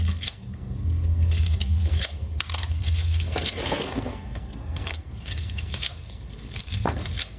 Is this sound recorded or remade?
remade